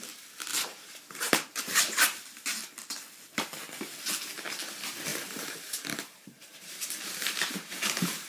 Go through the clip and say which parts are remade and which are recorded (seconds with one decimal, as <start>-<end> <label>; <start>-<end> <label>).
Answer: 0.0-0.5 recorded; 0.5-1.8 remade; 1.8-5.1 recorded; 5.1-8.3 remade